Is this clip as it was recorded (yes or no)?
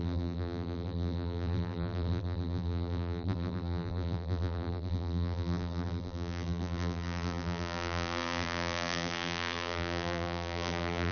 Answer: no